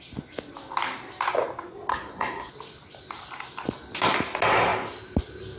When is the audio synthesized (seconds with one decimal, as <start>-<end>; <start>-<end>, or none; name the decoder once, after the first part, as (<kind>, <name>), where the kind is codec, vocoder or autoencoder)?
1.9-2.5 (codec, SNAC)